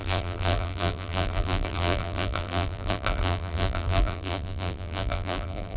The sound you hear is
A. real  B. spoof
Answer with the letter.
B